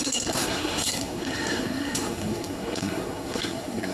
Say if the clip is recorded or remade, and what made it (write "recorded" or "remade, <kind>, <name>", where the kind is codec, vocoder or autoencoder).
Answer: remade, codec, SNAC